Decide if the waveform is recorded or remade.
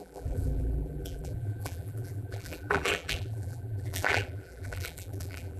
remade